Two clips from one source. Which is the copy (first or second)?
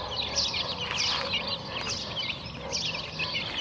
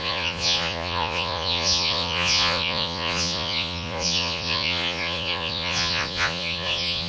second